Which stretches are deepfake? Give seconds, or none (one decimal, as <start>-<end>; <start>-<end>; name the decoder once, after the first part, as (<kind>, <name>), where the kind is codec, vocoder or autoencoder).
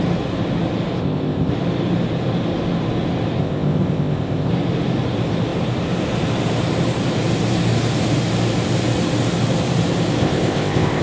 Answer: 1.0-1.5 (codec, ZipCodec); 3.4-4.5; 10.2-11.0